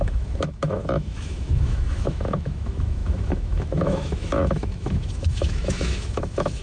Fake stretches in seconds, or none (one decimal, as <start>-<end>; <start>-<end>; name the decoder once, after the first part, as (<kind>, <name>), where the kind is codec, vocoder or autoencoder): 0.0-6.6 (autoencoder, DAC-VAE)